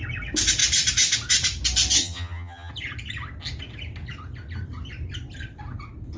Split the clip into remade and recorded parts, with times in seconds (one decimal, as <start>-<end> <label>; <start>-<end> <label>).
0.0-2.0 recorded; 2.0-2.7 remade; 2.7-6.2 recorded